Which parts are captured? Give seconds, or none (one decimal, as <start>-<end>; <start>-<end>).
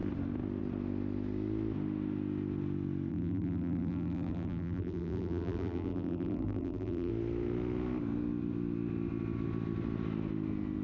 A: 0.0-3.1; 7.1-10.8